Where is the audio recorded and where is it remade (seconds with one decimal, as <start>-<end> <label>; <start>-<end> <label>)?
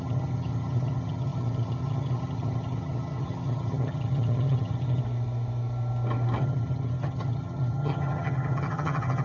0.0-5.0 remade; 5.0-6.4 recorded; 6.4-9.2 remade